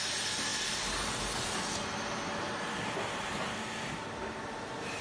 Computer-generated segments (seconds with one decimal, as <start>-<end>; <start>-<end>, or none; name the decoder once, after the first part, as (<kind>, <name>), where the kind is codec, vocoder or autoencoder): none